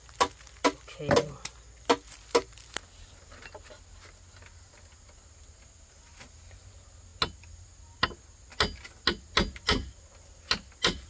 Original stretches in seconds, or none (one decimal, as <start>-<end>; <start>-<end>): 0.0-11.1